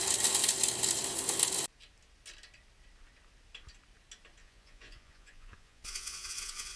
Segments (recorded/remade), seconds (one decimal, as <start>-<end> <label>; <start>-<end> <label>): 0.0-4.4 recorded; 4.4-6.8 remade